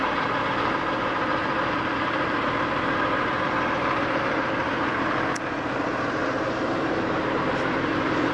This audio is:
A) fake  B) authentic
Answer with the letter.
A